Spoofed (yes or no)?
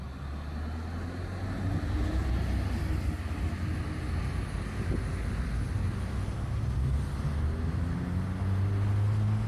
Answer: no